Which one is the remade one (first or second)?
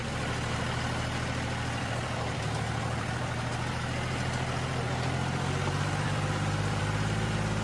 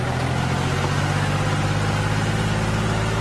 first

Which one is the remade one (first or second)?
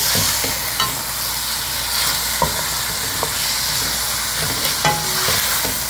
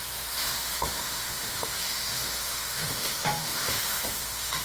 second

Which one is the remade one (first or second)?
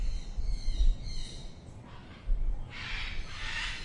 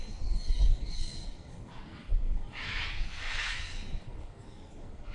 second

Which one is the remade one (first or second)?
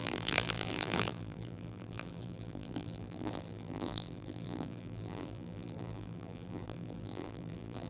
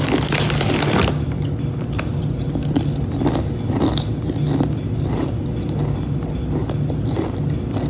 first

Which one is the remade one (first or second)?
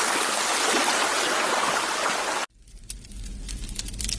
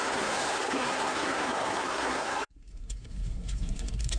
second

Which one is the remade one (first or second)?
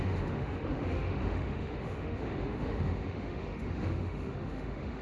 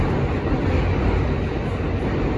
first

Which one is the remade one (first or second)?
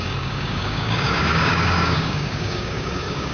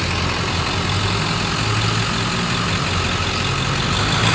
first